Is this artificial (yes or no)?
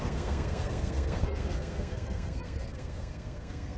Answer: yes